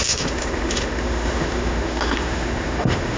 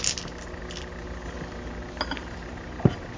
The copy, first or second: first